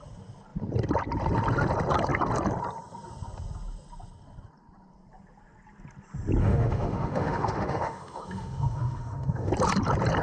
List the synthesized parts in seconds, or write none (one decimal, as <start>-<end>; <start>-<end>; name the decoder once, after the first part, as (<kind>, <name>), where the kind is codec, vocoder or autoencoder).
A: 6.4-9.5 (autoencoder, DAC-VAE)